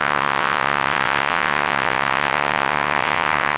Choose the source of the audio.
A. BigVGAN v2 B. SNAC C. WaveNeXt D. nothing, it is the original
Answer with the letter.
C